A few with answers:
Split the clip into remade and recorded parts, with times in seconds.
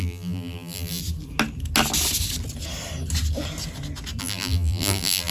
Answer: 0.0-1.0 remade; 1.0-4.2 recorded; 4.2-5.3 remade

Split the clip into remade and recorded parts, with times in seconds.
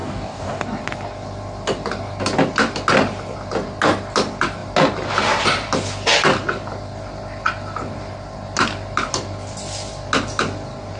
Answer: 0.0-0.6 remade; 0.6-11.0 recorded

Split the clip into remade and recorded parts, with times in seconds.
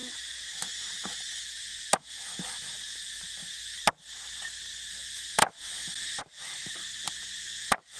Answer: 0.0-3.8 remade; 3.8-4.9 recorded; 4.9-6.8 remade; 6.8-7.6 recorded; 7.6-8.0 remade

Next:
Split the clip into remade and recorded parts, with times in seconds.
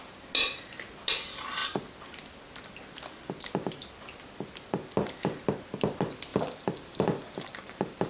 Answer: 0.0-6.3 recorded; 6.3-8.1 remade